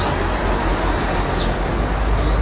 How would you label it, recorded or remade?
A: recorded